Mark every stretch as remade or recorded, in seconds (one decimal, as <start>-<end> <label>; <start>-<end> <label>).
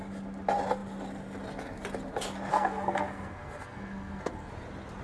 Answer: 0.0-2.5 recorded; 2.5-4.5 remade; 4.5-5.0 recorded